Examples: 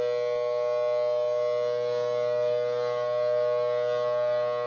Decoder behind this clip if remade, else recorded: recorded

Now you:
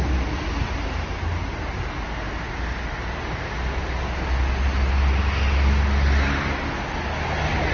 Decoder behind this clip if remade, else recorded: recorded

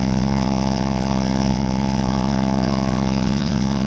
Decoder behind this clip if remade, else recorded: remade, vocoder, WaveNeXt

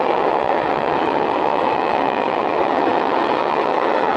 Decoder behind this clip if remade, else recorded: remade, vocoder, WaveNeXt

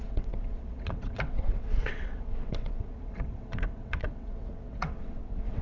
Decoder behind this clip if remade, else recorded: remade, vocoder, WaveNeXt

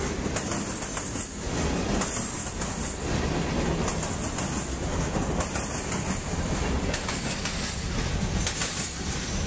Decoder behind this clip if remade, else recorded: recorded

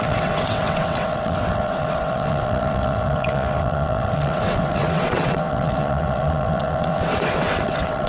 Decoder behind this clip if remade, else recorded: remade, vocoder, WaveNeXt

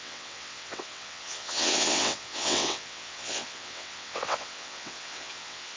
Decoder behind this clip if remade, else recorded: remade, vocoder, WaveNeXt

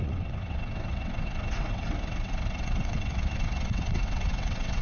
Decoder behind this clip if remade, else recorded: remade, vocoder, WaveNeXt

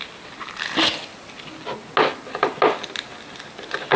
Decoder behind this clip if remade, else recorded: recorded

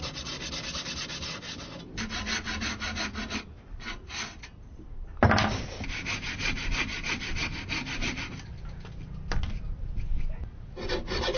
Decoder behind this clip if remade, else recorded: recorded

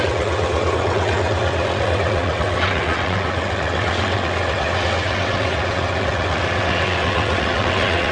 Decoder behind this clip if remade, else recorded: remade, vocoder, WaveNeXt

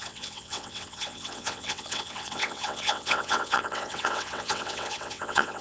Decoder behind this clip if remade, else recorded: remade, vocoder, WaveNeXt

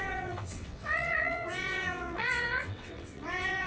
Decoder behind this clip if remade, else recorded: remade, vocoder, WaveNeXt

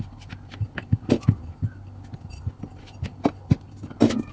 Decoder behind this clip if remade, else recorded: recorded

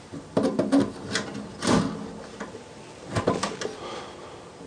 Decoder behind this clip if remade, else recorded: recorded